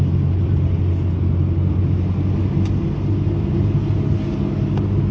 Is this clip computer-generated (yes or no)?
no